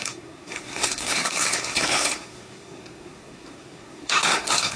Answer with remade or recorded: remade